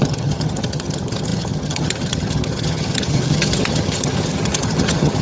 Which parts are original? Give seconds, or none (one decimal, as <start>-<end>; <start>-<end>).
none

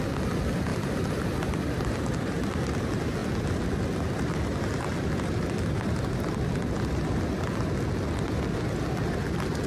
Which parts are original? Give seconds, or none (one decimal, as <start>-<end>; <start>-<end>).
0.0-0.7; 2.0-3.2; 7.2-9.7